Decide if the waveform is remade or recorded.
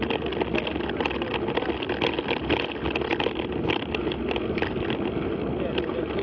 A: recorded